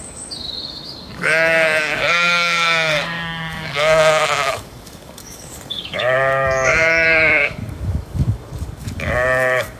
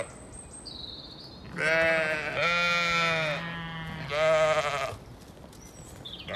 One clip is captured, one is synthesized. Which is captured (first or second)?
second